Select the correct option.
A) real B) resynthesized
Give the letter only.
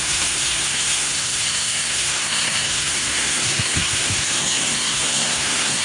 B